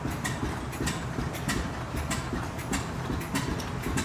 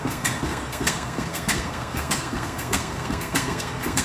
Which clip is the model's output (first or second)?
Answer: second